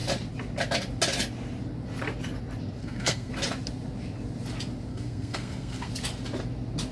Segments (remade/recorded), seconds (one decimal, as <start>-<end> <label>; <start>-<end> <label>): 0.0-2.8 recorded; 2.8-3.3 remade; 3.3-4.9 recorded; 4.9-5.9 remade; 5.9-6.9 recorded

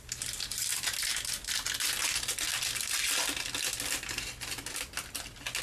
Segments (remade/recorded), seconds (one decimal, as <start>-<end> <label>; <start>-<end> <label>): 0.0-5.6 recorded

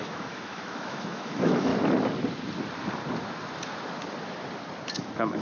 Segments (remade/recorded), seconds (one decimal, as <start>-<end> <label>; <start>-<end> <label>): 0.0-1.7 remade; 1.7-4.9 recorded; 4.9-5.4 remade

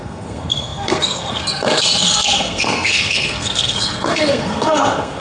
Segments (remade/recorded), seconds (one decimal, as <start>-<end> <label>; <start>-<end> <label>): 0.0-5.2 remade

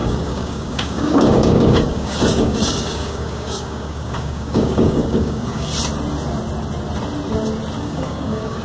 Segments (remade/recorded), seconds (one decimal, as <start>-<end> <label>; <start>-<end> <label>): 0.0-5.7 remade; 5.7-7.8 recorded; 7.8-8.6 remade

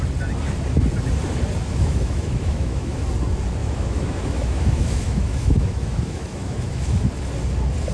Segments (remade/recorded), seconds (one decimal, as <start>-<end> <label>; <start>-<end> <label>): 0.0-1.7 recorded; 1.7-3.0 remade; 3.0-3.6 recorded; 3.6-7.1 remade; 7.1-7.9 recorded

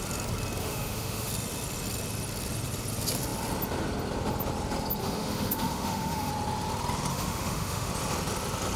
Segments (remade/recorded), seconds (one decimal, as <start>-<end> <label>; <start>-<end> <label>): 0.0-0.6 recorded; 0.6-1.3 remade; 1.3-5.0 recorded; 5.0-6.3 remade; 6.3-7.1 recorded; 7.1-7.9 remade; 7.9-8.8 recorded

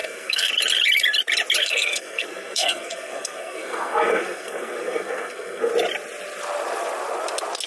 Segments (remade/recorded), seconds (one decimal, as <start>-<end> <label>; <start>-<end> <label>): 0.0-0.5 remade; 0.5-1.6 recorded; 1.6-5.7 remade; 5.7-7.7 recorded